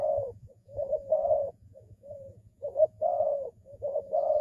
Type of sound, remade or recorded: remade